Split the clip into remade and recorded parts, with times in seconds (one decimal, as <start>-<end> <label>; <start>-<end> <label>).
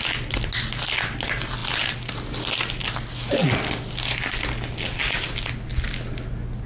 0.0-6.7 recorded